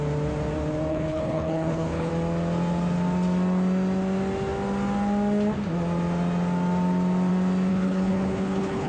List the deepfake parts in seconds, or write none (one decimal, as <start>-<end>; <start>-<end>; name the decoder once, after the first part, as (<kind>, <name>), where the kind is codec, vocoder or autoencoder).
0.9-2.1 (codec, HILCodec); 7.7-8.9